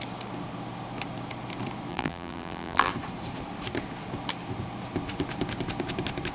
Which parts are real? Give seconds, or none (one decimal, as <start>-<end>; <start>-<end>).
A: 0.0-1.9; 2.9-6.3